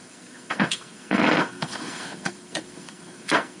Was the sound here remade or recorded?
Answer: remade